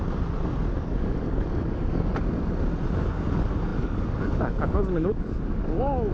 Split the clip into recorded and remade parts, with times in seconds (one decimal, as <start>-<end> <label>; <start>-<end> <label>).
0.0-0.7 recorded; 0.7-2.1 remade; 2.1-3.0 recorded; 3.0-6.1 remade

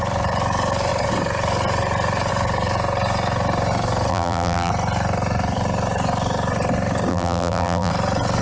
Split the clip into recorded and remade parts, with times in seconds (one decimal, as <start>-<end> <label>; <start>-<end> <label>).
0.0-4.1 recorded; 4.1-4.7 remade; 4.7-7.1 recorded; 7.1-7.9 remade; 7.9-8.4 recorded

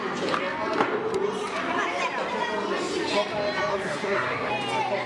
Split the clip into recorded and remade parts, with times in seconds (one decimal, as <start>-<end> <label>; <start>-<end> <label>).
0.0-3.7 recorded; 3.7-4.5 remade; 4.5-5.1 recorded

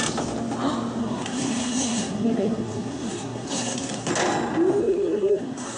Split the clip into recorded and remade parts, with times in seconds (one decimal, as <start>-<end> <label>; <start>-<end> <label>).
0.0-1.0 recorded; 1.0-4.1 remade; 4.1-4.8 recorded; 4.8-5.8 remade